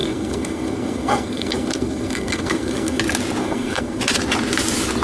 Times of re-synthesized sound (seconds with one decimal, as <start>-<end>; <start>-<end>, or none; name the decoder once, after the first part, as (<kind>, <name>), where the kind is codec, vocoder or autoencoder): 0.0-3.0 (codec, SNAC); 3.4-4.0